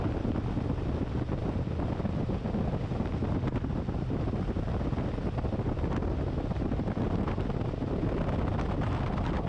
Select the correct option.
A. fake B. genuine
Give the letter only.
B